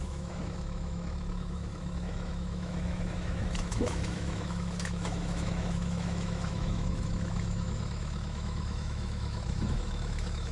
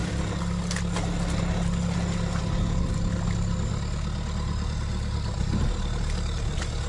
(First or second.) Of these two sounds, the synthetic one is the first